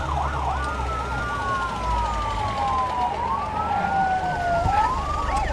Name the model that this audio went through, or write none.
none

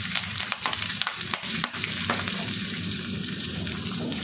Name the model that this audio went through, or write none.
vocoder, BigVGAN v2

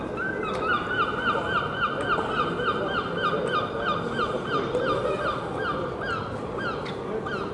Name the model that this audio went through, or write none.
none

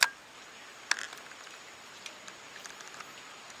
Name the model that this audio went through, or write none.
none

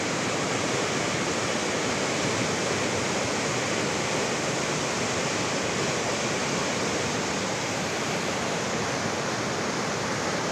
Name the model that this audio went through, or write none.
none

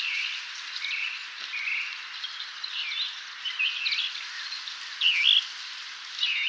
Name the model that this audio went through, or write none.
none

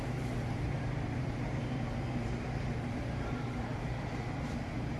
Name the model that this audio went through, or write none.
vocoder, BigVGAN v2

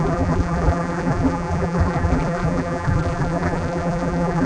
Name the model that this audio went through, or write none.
vocoder, BigVGAN v2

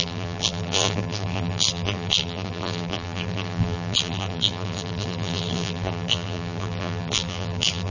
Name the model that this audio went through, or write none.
vocoder, BigVGAN v2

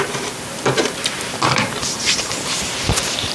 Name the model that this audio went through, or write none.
vocoder, BigVGAN v2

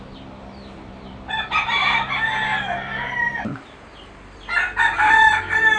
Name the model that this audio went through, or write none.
vocoder, BigVGAN v2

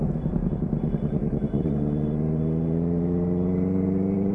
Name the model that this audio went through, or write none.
vocoder, BigVGAN v2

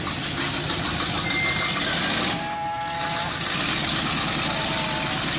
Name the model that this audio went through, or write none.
none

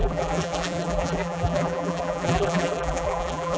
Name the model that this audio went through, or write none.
vocoder, BigVGAN v2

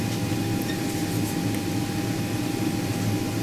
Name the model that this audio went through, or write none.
none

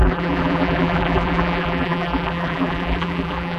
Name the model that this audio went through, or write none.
vocoder, BigVGAN v2